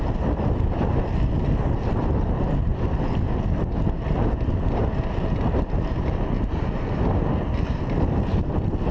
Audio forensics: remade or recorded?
recorded